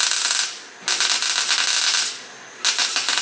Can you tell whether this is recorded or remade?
recorded